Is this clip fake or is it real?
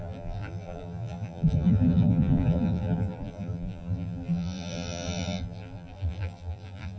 fake